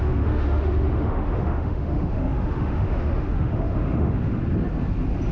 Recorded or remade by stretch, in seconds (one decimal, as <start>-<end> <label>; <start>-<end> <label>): 0.0-4.4 remade; 4.4-5.3 recorded